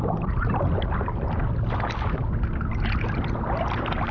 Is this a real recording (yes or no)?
yes